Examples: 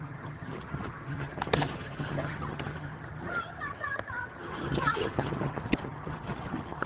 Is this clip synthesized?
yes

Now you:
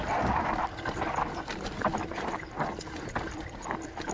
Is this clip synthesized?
no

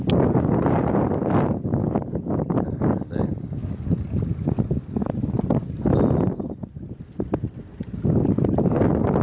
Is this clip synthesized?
no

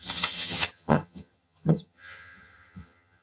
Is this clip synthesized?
yes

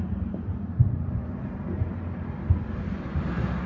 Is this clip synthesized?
no